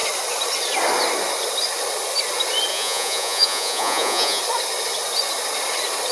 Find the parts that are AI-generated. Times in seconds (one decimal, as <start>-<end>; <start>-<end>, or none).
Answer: 2.7-4.4